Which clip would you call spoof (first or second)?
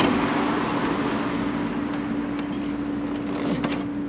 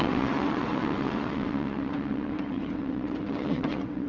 second